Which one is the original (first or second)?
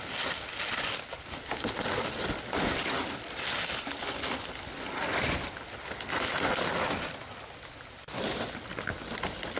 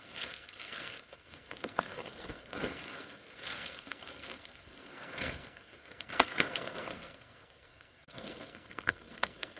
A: first